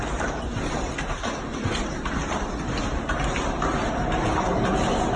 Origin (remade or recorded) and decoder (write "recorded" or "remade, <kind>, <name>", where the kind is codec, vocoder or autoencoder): recorded